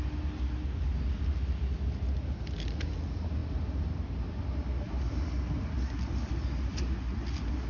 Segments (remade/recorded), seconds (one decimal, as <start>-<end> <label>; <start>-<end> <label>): 0.0-7.7 recorded